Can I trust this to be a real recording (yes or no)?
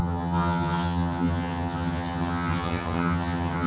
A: no